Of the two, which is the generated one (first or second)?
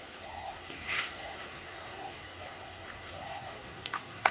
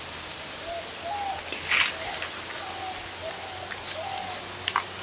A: first